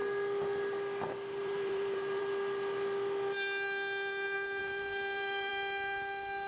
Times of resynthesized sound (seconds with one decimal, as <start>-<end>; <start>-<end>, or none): 1.4-2.2; 4.6-5.5